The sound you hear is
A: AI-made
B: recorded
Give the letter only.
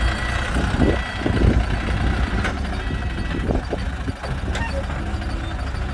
B